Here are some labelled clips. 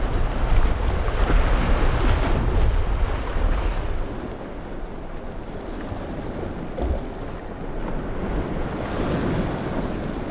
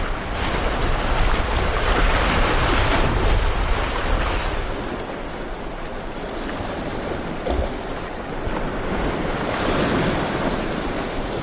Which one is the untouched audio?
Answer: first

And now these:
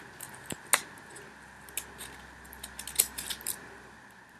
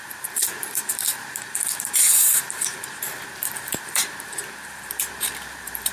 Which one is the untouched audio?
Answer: first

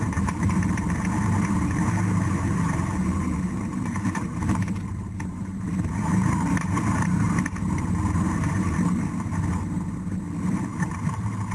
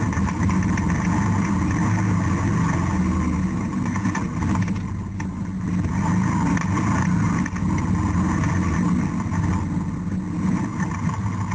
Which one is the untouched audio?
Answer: second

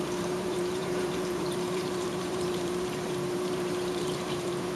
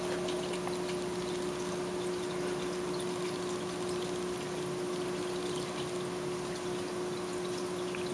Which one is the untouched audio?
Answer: second